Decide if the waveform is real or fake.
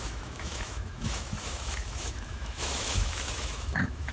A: fake